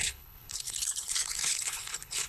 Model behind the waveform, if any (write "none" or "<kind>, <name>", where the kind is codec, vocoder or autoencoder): codec, HILCodec